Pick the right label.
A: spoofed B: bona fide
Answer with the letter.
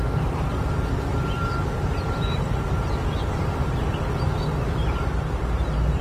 B